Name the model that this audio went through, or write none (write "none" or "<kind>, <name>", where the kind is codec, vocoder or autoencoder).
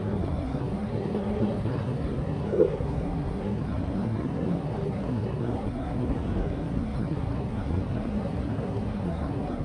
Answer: codec, SNAC